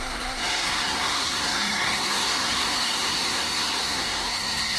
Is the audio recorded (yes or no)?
no